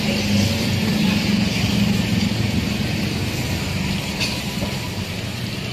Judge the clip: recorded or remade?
recorded